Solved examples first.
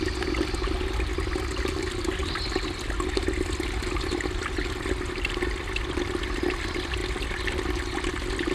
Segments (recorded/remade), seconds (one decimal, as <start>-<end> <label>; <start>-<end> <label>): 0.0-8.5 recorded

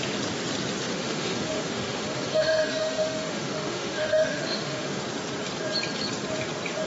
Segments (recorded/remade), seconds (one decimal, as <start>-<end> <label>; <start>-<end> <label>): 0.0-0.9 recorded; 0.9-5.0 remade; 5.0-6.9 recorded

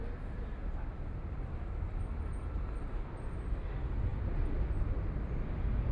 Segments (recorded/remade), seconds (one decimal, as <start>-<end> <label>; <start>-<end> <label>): 0.0-5.9 recorded

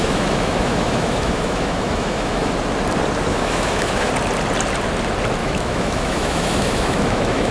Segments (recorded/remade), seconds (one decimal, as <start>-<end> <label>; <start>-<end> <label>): 0.0-2.5 remade; 2.5-3.3 recorded; 3.3-4.1 remade; 4.1-5.4 recorded; 5.4-7.5 remade